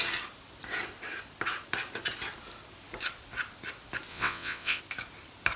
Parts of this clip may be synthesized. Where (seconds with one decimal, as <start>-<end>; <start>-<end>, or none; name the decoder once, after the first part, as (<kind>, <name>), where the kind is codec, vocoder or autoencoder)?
4.1-4.8 (vocoder, WaveNeXt)